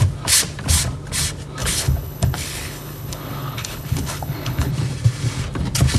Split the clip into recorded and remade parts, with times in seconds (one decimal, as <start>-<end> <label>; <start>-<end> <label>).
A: 0.0-1.6 recorded; 1.6-4.7 remade; 4.7-6.0 recorded